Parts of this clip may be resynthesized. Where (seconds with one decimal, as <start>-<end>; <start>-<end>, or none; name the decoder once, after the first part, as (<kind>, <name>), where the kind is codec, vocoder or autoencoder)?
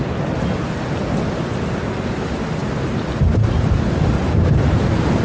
none